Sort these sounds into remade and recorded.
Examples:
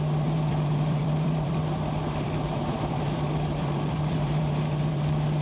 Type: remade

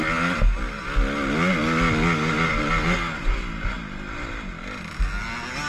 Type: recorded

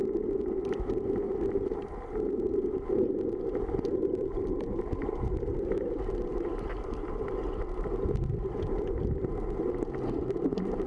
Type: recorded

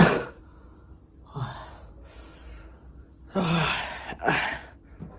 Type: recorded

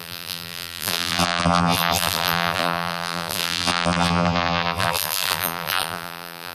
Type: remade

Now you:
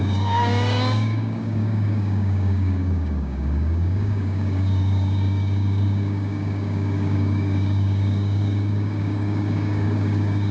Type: remade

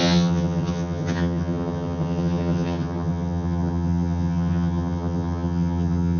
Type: remade